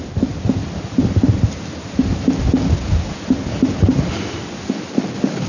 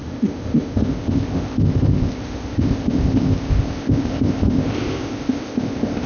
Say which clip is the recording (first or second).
first